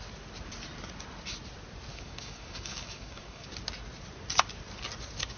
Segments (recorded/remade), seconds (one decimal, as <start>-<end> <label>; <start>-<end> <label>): 0.0-1.9 recorded; 1.9-3.5 remade; 3.5-5.4 recorded